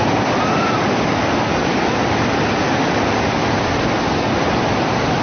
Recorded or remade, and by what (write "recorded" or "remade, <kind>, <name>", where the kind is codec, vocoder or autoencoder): recorded